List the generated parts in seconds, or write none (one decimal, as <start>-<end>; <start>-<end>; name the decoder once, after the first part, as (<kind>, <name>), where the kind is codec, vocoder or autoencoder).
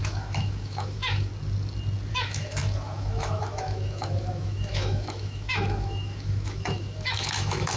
0.0-1.3 (autoencoder, DAC-VAE); 2.1-7.8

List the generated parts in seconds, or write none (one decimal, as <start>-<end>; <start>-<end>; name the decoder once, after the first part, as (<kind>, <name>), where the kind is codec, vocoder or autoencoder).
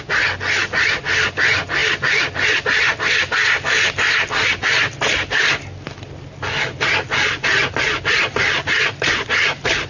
none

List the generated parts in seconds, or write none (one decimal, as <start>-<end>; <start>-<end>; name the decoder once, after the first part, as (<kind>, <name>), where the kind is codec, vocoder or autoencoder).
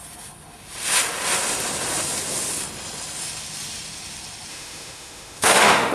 4.5-5.9 (autoencoder, DAC-VAE)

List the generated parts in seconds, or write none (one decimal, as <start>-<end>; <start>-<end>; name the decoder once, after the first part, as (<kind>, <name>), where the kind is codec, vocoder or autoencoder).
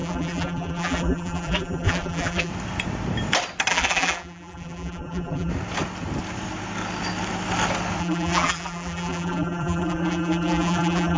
0.0-2.5 (vocoder, BigVGAN v2); 3.7-5.5; 8.0-11.2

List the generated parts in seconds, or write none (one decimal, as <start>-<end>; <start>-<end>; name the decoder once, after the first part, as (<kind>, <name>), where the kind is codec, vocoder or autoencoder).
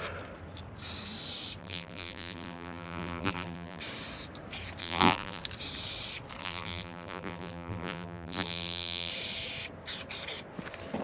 1.6-3.8 (vocoder, BigVGAN v2); 4.8-5.4; 6.4-9.1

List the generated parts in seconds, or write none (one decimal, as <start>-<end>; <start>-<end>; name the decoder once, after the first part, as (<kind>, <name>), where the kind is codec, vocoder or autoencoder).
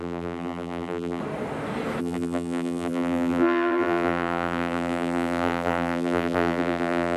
0.0-1.2 (vocoder, BigVGAN v2); 2.0-7.2